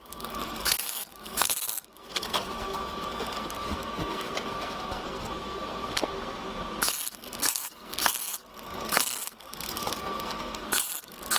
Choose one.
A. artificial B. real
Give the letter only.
A